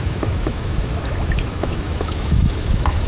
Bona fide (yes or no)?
no